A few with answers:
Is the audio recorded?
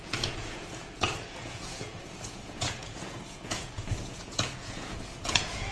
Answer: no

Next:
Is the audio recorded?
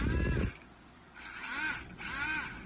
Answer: yes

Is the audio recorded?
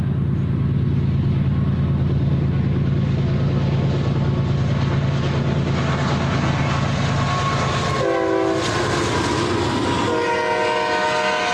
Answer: yes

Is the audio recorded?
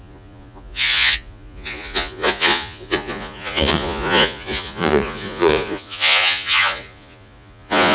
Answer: no